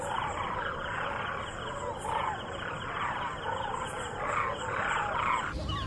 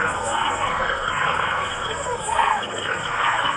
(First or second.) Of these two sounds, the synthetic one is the second